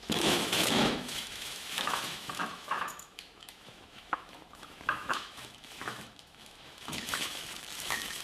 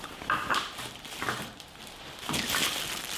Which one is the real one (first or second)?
second